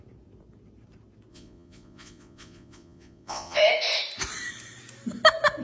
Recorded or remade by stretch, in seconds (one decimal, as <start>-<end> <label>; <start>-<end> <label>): 0.0-1.3 recorded; 1.3-3.6 remade; 3.6-5.6 recorded

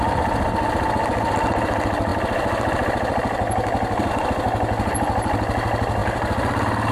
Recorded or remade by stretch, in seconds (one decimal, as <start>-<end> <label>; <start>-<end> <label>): 0.0-6.9 recorded

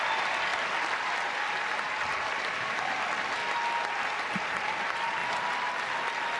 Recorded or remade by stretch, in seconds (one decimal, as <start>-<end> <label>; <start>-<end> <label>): 0.0-6.4 recorded

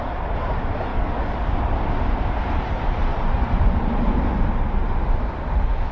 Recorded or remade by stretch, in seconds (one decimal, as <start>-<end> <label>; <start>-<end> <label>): 0.0-0.9 recorded; 0.9-1.5 remade; 1.5-5.9 recorded

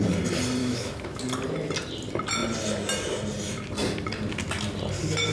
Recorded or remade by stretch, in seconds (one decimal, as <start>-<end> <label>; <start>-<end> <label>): 0.0-0.6 recorded; 0.6-1.2 remade; 1.2-5.3 recorded

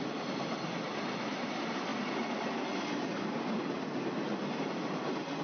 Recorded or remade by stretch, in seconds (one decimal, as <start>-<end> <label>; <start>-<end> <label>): 0.0-5.4 recorded

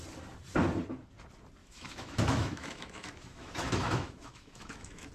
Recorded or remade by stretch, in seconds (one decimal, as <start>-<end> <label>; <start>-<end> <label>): 0.0-1.6 recorded; 1.6-5.1 remade

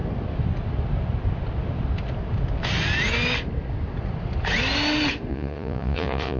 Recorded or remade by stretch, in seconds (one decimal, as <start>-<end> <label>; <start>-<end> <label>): 0.0-5.3 recorded; 5.3-6.4 remade